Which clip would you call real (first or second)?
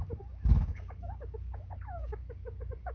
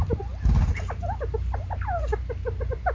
second